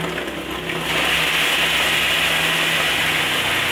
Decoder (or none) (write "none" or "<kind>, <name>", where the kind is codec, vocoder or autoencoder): none